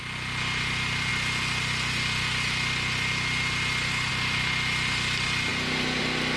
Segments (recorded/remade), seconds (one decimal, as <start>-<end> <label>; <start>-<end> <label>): 0.0-5.5 recorded; 5.5-6.0 remade; 6.0-6.4 recorded